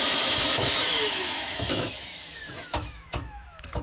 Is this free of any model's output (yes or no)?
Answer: no